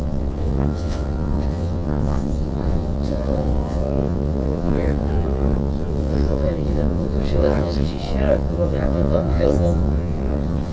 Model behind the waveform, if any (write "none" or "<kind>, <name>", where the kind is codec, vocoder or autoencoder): vocoder, WaveNeXt